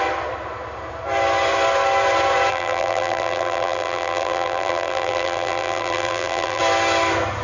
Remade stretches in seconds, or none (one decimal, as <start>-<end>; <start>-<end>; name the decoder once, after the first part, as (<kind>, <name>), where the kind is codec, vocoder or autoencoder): 2.5-6.6 (vocoder, BigVGAN v2)